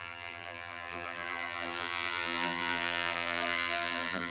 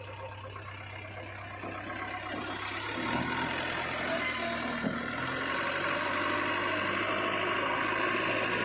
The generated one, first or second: first